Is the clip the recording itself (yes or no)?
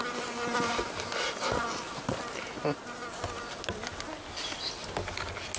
yes